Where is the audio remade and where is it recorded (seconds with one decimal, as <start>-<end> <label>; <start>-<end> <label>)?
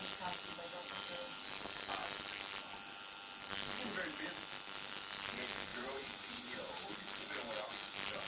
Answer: 0.0-5.7 recorded; 5.7-6.9 remade; 6.9-8.3 recorded